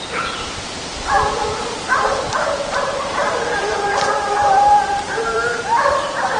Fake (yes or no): yes